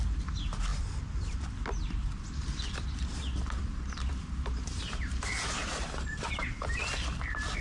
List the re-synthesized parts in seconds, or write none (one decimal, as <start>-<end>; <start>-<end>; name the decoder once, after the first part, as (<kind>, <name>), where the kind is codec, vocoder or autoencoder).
4.1-6.8 (vocoder, BigVGAN v2)